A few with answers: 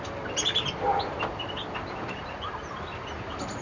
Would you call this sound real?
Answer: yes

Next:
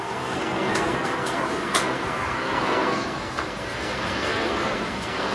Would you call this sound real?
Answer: no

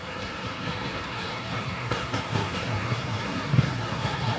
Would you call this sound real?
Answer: no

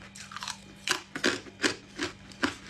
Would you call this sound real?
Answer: yes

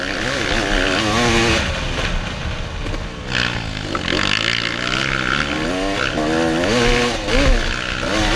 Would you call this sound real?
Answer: yes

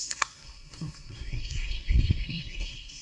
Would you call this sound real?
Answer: no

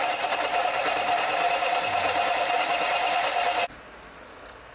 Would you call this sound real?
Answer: yes